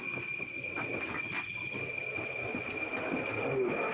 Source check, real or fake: real